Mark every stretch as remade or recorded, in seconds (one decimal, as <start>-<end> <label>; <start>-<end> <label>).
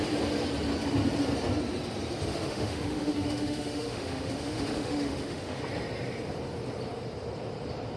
0.0-2.3 recorded; 2.3-5.6 remade; 5.6-8.0 recorded